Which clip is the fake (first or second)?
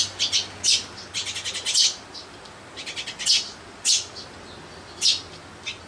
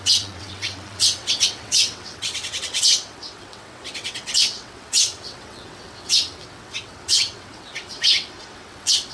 second